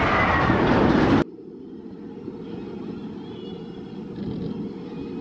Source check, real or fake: real